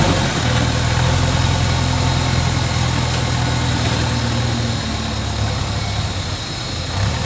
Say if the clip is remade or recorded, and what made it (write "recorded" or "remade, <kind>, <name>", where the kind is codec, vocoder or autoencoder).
recorded